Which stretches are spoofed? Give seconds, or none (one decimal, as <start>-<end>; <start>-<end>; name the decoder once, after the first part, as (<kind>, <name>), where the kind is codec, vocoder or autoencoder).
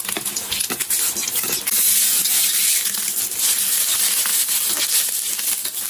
1.2-3.4 (vocoder, BigVGAN v2)